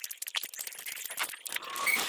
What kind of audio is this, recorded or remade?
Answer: recorded